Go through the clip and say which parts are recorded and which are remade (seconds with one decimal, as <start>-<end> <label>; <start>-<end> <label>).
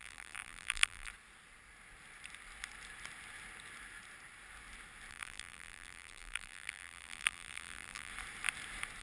0.0-1.1 remade; 1.1-5.1 recorded; 5.1-8.1 remade; 8.1-9.0 recorded